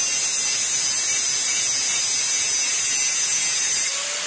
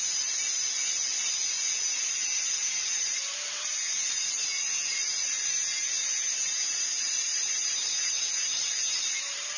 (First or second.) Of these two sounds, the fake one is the second